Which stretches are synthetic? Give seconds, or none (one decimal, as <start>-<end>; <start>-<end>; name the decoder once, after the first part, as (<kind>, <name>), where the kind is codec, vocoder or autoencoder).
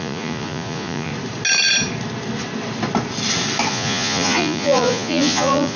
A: 0.0-1.1 (vocoder, Vocos); 3.7-5.8